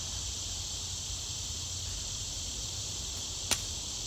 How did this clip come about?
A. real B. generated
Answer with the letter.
A